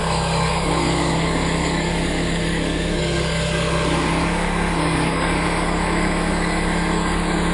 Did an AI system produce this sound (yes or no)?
yes